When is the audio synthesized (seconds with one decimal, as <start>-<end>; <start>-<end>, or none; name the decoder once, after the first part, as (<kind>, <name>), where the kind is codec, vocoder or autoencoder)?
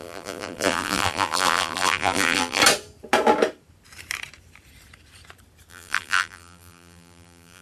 0.0-2.6 (vocoder, BigVGAN v2); 5.7-7.6